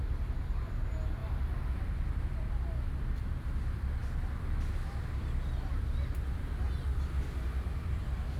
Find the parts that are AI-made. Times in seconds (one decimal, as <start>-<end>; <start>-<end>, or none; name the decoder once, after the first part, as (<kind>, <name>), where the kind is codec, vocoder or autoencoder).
none